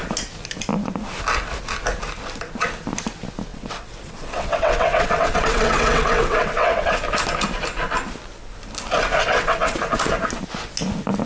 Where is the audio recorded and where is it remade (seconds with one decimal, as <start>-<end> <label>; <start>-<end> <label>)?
0.0-3.5 recorded; 3.5-7.0 remade; 7.0-9.2 recorded; 9.2-9.8 remade; 9.8-11.3 recorded